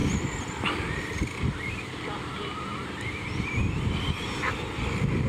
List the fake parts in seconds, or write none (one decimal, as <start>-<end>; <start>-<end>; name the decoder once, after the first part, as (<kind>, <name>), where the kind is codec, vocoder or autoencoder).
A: none